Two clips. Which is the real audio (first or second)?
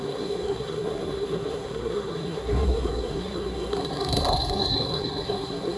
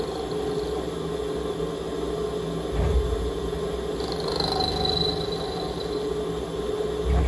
second